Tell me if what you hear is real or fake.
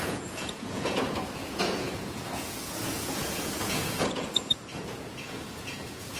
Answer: fake